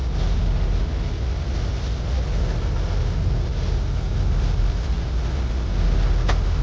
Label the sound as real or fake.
real